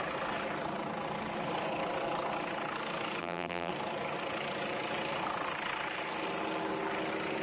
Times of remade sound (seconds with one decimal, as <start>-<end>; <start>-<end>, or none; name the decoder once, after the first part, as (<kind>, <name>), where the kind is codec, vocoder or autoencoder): 3.2-3.7 (vocoder, BigVGAN v2)